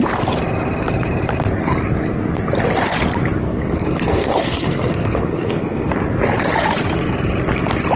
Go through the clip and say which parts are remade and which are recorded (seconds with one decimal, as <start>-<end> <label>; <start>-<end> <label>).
0.0-3.4 recorded; 3.4-5.9 remade; 5.9-8.0 recorded